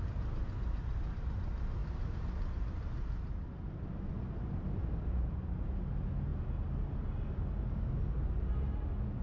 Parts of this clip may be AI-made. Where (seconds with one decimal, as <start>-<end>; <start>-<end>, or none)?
none